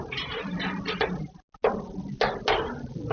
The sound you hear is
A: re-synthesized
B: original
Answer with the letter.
B